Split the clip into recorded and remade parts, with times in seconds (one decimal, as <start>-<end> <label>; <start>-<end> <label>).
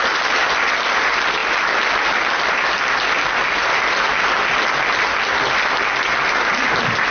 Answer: 0.0-7.1 recorded